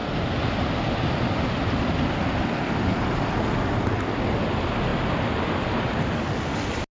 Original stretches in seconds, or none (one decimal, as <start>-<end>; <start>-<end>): 0.0-6.9